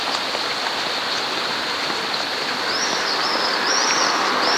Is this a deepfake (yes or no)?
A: no